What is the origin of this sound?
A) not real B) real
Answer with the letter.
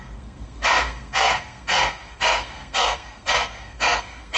A